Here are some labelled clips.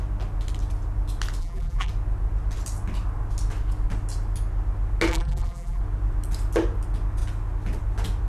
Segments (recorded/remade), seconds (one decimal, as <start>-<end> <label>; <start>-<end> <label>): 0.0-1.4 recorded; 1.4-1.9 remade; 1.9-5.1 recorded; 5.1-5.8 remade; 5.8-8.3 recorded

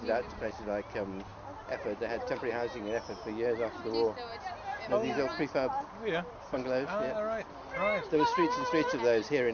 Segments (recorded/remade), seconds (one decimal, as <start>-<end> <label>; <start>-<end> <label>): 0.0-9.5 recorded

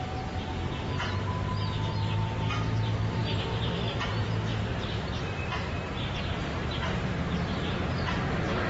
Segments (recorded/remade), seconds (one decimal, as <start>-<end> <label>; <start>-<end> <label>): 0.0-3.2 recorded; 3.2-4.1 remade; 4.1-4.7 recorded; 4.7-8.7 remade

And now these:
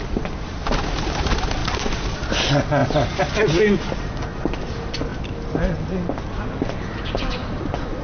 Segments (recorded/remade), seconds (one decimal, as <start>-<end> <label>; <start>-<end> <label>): 0.0-1.6 recorded; 1.6-2.3 remade; 2.3-8.0 recorded

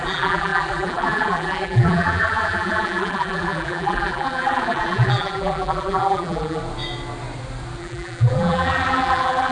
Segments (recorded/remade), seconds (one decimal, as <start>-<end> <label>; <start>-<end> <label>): 0.0-6.6 remade; 6.6-7.8 recorded; 7.8-9.5 remade

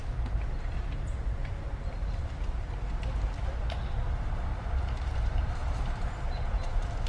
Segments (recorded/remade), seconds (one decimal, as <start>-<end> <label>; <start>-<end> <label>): 0.0-1.4 recorded; 1.4-2.3 remade; 2.3-4.5 recorded; 4.5-7.1 remade